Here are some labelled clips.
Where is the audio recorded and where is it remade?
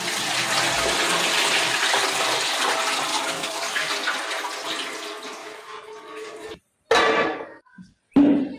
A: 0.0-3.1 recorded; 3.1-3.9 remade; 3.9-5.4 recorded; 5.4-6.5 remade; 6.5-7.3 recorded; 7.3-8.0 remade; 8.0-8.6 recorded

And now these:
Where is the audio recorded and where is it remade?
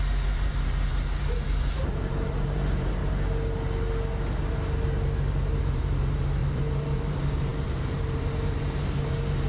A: 0.0-3.0 remade; 3.0-5.6 recorded; 5.6-9.5 remade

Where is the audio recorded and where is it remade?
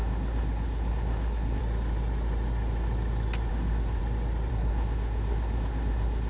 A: 0.0-1.6 remade; 1.6-3.5 recorded; 3.5-4.0 remade; 4.0-4.5 recorded; 4.5-6.3 remade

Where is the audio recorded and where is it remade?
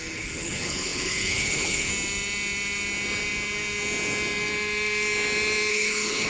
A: 0.0-1.9 remade; 1.9-5.7 recorded; 5.7-6.3 remade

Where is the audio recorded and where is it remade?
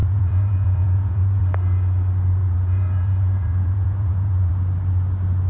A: 0.0-1.4 remade; 1.4-2.4 recorded; 2.4-4.5 remade; 4.5-5.5 recorded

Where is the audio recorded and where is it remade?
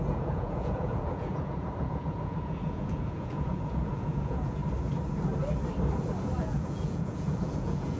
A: 0.0-4.6 remade; 4.6-6.4 recorded; 6.4-8.0 remade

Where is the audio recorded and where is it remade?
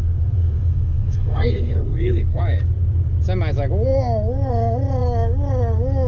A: 0.0-2.4 remade; 2.4-6.1 recorded